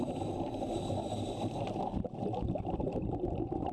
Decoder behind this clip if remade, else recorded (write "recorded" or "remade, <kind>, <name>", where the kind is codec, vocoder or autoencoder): recorded